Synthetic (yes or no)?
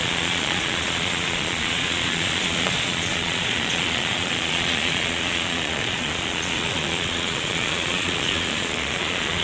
yes